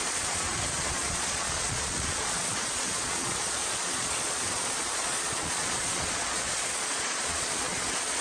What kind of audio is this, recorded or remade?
remade